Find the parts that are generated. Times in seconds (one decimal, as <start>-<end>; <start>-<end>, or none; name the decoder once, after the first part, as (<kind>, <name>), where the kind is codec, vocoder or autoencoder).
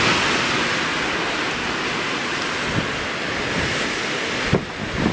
none